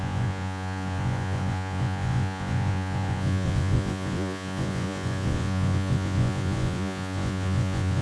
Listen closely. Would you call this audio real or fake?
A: fake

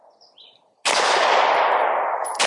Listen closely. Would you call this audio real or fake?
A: real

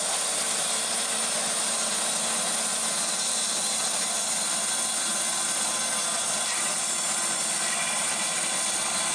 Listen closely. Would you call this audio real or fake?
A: real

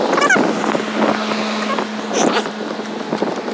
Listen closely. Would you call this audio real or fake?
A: real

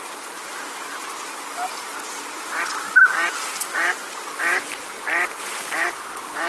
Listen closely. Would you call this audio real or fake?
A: real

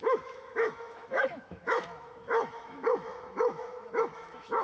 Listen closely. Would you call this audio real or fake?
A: fake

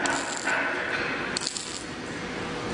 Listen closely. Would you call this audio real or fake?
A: real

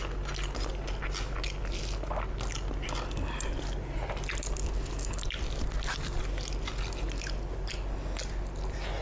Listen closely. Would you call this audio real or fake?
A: real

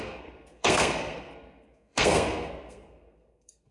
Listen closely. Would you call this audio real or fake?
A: fake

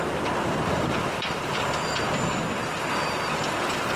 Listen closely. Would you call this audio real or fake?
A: real